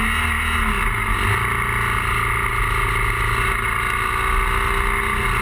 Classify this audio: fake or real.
real